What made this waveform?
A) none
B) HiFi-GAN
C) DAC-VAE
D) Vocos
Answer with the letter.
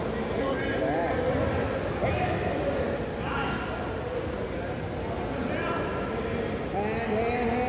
A